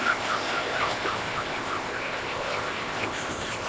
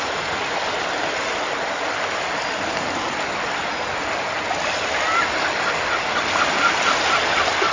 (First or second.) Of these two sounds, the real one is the second